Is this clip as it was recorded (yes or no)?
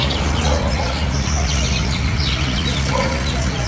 no